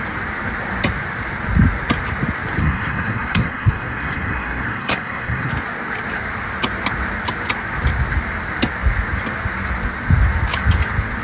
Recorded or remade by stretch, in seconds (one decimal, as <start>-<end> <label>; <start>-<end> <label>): 0.0-2.6 recorded; 2.6-5.5 remade; 5.5-11.2 recorded